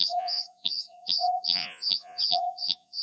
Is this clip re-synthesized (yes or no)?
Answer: yes